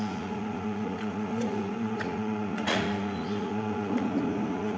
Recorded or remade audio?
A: remade